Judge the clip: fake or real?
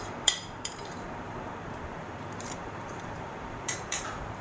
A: fake